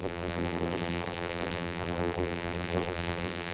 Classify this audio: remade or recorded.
remade